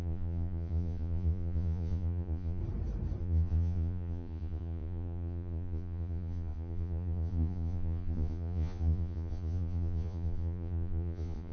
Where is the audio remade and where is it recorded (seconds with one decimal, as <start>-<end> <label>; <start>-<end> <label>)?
0.0-2.6 remade; 2.6-3.2 recorded; 3.2-11.5 remade